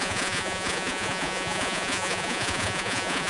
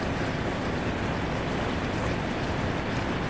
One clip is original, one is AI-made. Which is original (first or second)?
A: second